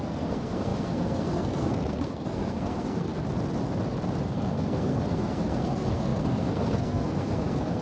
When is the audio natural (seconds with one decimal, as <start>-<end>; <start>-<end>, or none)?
3.1-4.2